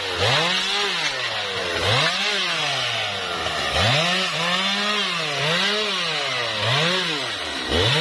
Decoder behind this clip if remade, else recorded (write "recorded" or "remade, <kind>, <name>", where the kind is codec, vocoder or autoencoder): recorded